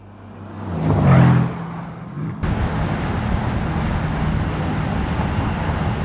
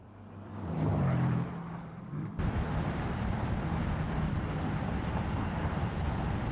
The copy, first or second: second